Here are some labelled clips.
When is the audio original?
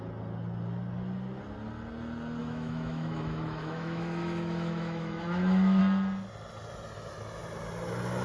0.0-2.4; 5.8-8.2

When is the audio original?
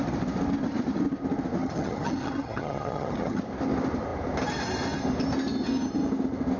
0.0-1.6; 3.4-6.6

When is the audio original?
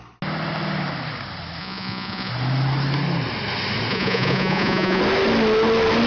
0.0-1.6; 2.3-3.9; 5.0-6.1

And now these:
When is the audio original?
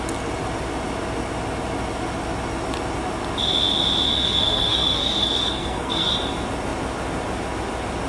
0.0-4.1; 6.1-8.1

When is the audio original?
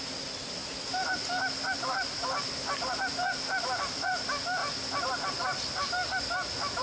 0.0-6.8